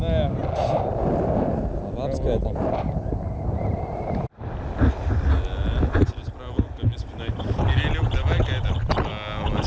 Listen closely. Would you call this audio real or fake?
real